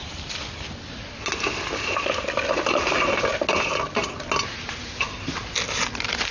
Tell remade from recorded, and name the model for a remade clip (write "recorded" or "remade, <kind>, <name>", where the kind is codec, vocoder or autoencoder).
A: recorded